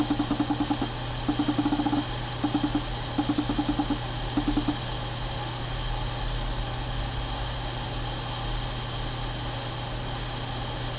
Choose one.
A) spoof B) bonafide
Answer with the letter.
B